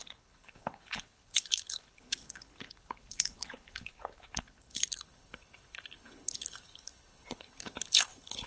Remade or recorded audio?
remade